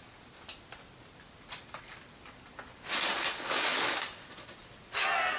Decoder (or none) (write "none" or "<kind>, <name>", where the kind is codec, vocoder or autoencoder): none